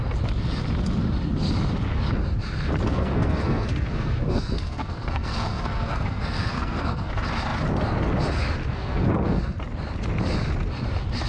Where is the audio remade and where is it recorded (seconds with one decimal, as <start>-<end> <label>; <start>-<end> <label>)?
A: 0.0-2.9 recorded; 2.9-7.1 remade; 7.1-8.6 recorded; 8.6-9.5 remade; 9.5-11.3 recorded